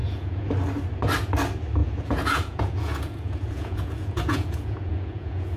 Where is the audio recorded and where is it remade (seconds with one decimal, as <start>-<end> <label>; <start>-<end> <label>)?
0.0-0.5 remade; 0.5-1.8 recorded; 1.8-5.6 remade

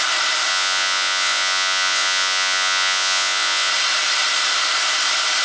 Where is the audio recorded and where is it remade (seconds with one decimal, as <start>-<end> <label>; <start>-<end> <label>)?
0.0-0.5 recorded; 0.5-3.7 remade; 3.7-5.4 recorded